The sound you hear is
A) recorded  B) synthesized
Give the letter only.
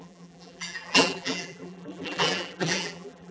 B